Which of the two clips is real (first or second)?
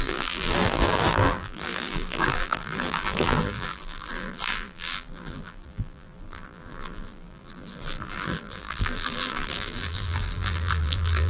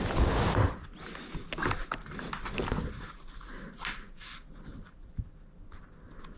second